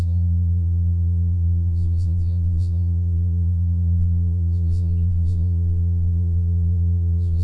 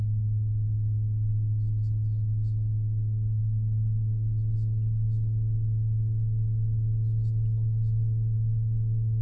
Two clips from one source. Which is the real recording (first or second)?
second